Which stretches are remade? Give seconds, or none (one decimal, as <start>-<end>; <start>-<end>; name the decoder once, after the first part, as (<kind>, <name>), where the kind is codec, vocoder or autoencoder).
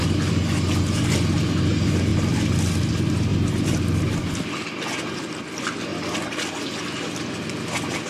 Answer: none